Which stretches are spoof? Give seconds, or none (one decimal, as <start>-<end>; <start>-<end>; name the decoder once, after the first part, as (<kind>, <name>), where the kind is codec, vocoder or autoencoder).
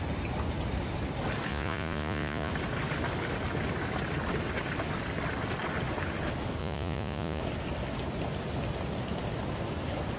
1.5-2.5 (vocoder, Vocos); 6.6-7.4